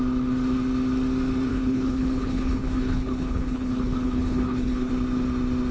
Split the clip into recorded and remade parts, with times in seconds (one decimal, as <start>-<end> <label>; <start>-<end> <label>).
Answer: 0.0-1.5 recorded; 1.5-4.9 remade; 4.9-5.7 recorded